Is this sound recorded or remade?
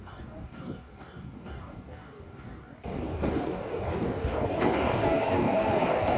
remade